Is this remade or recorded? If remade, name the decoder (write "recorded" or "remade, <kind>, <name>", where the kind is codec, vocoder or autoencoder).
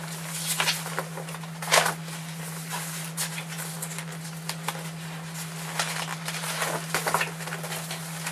recorded